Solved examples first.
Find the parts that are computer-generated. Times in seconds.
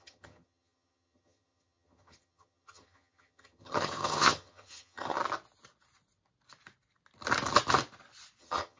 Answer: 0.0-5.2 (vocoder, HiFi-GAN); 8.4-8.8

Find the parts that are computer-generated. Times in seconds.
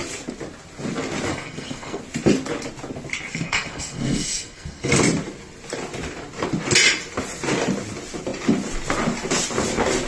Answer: 1.3-2.0 (codec, SNAC); 3.3-4.9